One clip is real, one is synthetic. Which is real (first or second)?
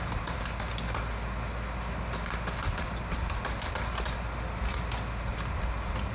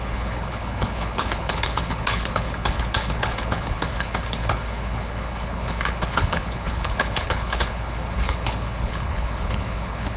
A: first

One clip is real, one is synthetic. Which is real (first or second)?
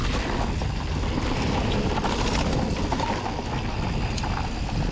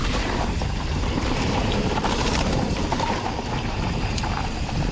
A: first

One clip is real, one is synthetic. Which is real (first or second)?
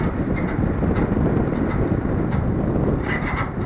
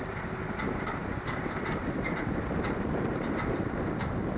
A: first